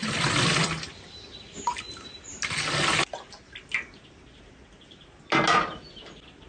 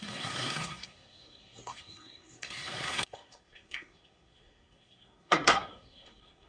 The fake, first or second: second